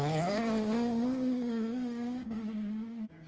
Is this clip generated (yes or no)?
yes